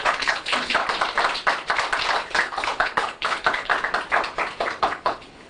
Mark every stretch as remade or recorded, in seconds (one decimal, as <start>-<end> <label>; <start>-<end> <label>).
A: 0.0-0.8 remade; 0.8-2.2 recorded; 2.2-3.7 remade; 3.7-4.8 recorded; 4.8-5.5 remade